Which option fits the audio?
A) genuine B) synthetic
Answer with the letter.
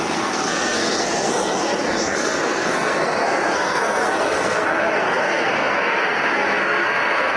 B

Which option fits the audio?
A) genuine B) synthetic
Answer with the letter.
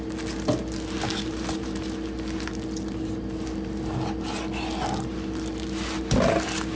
A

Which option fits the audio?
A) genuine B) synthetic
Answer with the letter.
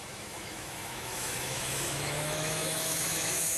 B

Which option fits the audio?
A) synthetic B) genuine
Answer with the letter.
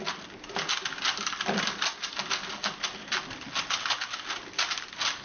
B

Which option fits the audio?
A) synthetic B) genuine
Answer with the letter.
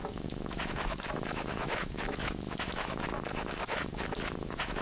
A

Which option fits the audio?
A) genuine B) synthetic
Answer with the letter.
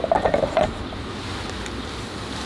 A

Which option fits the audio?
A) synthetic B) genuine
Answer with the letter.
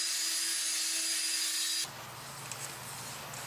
B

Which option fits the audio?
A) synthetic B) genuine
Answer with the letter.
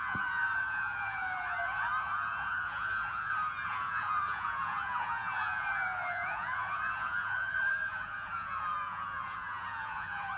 A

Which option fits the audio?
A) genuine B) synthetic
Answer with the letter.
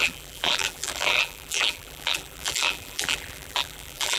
B